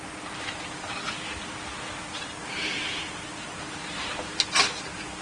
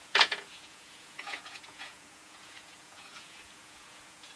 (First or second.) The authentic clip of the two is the first